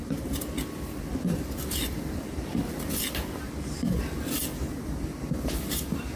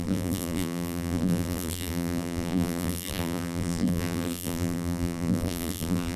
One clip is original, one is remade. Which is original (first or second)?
first